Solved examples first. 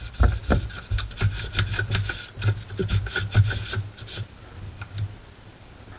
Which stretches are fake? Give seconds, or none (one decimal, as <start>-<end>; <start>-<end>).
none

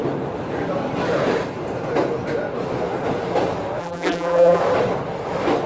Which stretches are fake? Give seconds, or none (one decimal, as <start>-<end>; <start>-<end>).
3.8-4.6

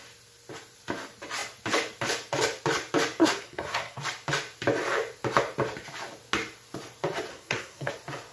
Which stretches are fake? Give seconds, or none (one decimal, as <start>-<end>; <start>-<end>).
3.2-4.0; 7.3-7.9

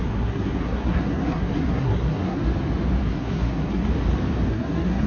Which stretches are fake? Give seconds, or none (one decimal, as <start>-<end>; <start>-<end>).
0.0-2.4; 3.0-3.9; 4.5-5.1